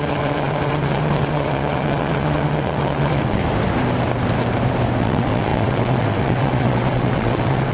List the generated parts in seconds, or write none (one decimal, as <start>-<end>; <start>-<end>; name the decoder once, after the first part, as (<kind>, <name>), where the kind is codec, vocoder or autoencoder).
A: 0.0-3.4 (vocoder, WaveNeXt); 5.0-7.7